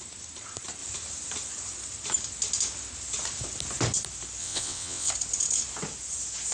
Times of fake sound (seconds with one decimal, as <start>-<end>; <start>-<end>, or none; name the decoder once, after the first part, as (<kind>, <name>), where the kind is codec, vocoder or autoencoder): 4.4-5.1 (vocoder, WaveNeXt)